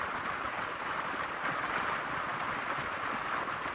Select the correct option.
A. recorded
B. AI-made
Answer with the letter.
A